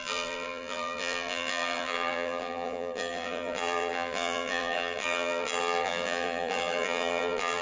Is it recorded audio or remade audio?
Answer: remade